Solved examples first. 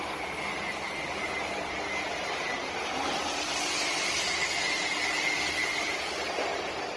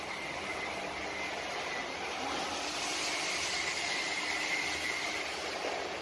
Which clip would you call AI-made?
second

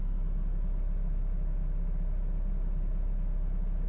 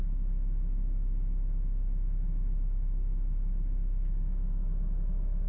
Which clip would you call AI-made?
second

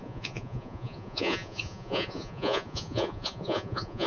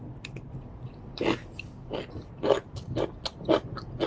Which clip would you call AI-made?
first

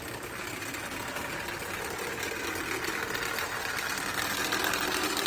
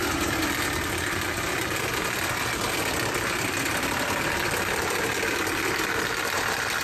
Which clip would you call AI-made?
second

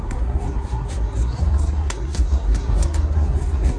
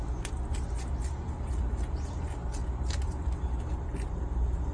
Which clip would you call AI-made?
first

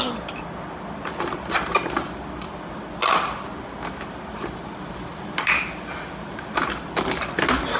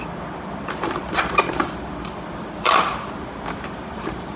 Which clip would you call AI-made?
second